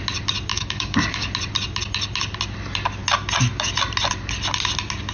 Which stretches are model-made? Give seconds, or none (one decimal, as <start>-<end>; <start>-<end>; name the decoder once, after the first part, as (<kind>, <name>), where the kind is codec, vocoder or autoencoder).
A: 0.5-1.3 (codec, DAC)